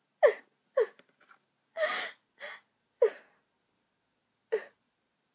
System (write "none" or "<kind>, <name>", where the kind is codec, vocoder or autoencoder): none